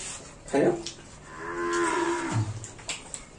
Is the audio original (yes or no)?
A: yes